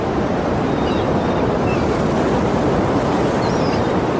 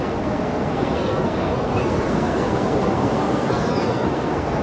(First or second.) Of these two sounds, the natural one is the first